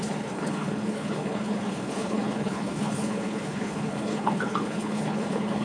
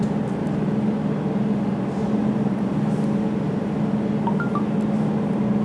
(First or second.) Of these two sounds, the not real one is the first